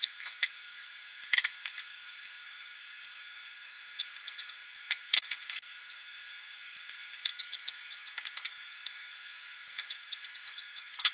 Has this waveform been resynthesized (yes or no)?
yes